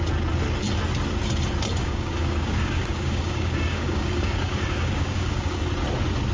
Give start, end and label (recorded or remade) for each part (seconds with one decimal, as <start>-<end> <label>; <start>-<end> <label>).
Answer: 0.0-1.8 recorded; 1.8-5.6 remade; 5.6-6.3 recorded